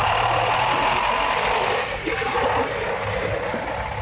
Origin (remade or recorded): recorded